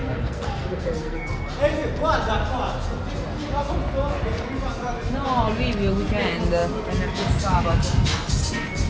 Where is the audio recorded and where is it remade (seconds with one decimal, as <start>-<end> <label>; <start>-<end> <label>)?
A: 0.0-1.4 remade; 1.4-8.9 recorded